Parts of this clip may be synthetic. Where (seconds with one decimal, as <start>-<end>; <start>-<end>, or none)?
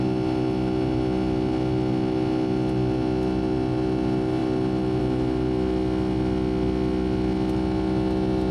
none